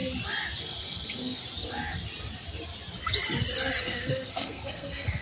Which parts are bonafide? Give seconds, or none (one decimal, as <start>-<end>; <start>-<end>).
0.0-0.6; 1.4-3.8